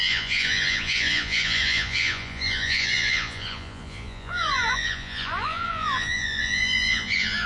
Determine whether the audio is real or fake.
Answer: fake